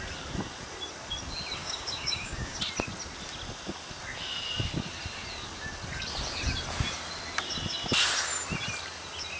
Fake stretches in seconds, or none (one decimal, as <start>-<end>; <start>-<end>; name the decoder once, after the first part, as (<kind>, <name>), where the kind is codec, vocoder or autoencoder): 1.6-2.6 (codec, DAC)